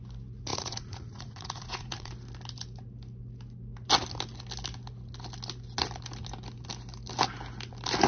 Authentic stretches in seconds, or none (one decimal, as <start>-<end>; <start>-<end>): 0.0-0.5; 2.1-8.1